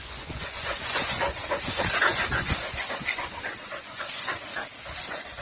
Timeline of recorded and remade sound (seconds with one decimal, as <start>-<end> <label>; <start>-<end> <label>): 0.0-4.5 remade; 4.5-5.0 recorded; 5.0-5.4 remade